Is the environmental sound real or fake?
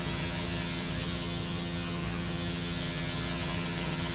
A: fake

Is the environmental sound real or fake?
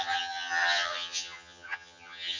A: fake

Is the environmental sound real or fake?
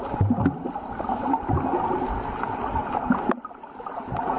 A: real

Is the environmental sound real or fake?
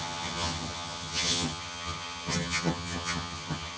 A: fake